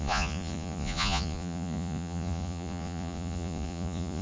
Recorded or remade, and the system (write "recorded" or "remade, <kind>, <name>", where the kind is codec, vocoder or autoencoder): remade, vocoder, Vocos